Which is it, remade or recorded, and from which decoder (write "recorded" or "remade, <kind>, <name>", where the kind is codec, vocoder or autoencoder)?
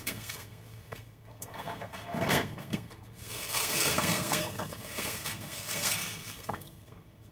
remade, codec, SNAC